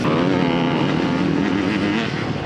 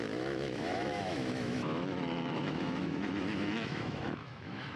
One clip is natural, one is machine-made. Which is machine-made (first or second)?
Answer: second